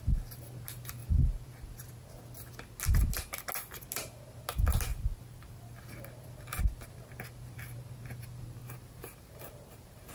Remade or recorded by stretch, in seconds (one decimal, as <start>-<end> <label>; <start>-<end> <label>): 0.0-4.9 recorded; 4.9-5.9 remade; 5.9-8.6 recorded; 8.6-10.1 remade